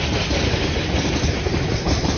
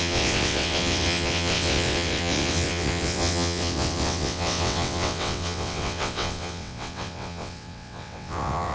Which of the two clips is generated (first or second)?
second